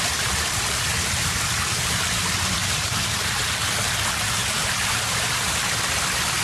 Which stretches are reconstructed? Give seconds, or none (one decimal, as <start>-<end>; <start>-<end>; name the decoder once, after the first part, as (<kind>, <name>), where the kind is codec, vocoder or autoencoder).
2.6-3.6 (vocoder, BigVGAN v2); 4.4-5.6